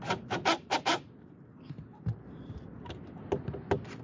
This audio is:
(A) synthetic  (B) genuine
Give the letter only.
B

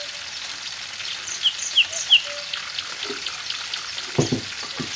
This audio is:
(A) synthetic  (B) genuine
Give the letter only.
B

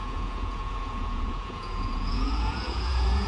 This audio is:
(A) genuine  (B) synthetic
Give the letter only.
B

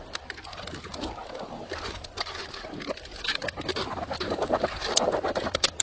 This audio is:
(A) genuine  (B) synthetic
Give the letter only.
B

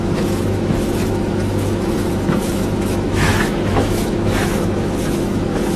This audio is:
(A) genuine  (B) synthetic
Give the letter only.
B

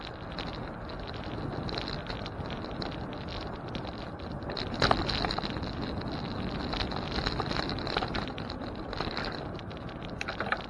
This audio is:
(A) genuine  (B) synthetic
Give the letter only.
A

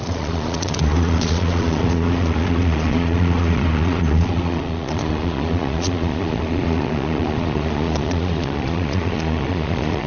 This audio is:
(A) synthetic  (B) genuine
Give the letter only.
A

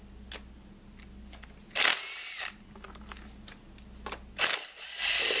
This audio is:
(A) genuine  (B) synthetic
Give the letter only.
A